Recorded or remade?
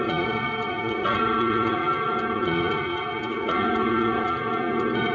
remade